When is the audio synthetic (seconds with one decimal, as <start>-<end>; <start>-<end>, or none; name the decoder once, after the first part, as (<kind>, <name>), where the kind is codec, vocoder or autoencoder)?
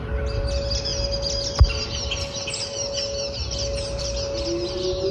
none